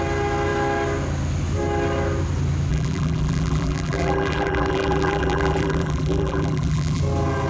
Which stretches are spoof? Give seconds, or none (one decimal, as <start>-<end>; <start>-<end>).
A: 2.7-7.0

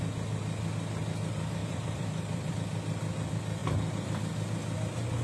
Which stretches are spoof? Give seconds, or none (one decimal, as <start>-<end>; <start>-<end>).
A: 1.6-2.5; 3.6-4.2